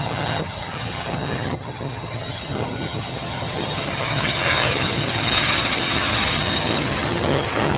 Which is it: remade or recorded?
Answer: remade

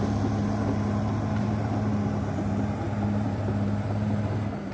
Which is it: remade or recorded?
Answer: remade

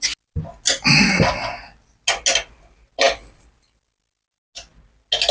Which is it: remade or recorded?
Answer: recorded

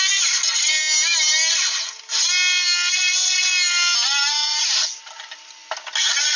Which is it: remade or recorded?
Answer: recorded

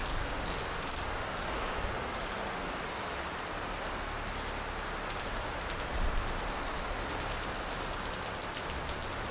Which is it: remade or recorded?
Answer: recorded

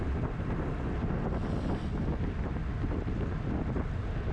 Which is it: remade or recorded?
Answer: recorded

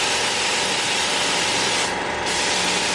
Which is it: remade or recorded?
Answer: recorded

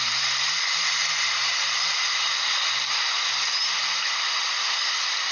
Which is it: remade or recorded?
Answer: recorded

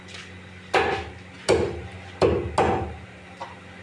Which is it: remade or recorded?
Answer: recorded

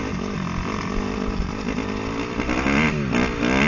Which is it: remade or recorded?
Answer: recorded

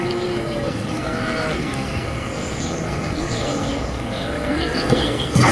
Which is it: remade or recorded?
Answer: remade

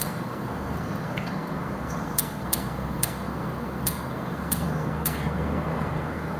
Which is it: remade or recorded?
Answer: remade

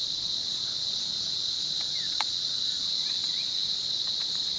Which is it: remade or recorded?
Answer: remade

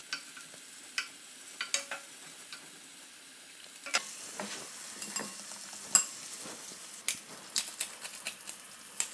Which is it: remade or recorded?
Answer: recorded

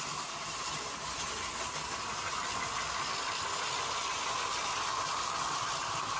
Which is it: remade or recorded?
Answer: recorded